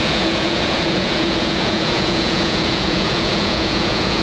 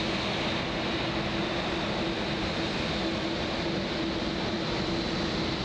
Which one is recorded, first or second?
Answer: second